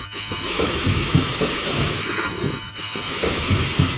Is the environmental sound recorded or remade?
remade